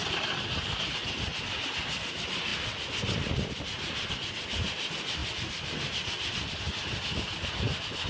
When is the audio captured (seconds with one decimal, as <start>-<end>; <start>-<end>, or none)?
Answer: 0.0-5.2; 7.5-8.1